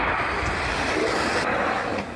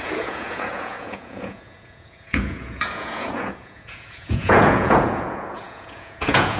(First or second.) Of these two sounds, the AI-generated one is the second